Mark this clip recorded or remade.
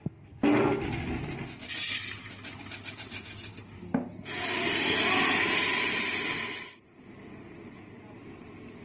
recorded